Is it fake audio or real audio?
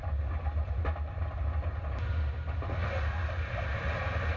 real